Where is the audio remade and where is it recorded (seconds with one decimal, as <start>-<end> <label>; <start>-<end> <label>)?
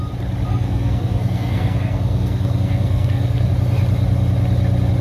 0.0-0.5 recorded; 0.5-3.5 remade; 3.5-5.0 recorded